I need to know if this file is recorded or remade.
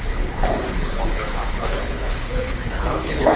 remade